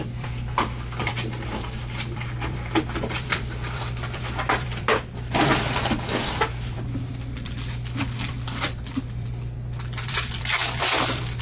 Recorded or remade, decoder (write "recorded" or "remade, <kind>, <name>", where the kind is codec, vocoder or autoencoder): remade, vocoder, BigVGAN v2